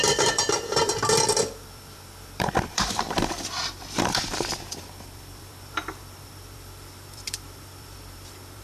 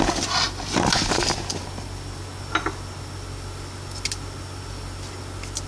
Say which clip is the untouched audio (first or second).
second